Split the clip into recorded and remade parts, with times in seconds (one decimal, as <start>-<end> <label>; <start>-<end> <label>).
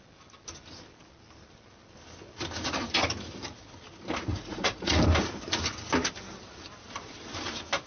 0.0-4.3 recorded; 4.3-5.0 remade; 5.0-7.9 recorded